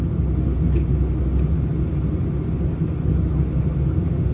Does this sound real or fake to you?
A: real